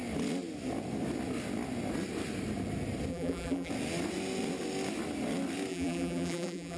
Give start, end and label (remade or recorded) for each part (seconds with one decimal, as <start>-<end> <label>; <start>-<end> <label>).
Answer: 0.0-3.1 recorded; 3.1-3.7 remade; 3.7-5.7 recorded; 5.7-6.8 remade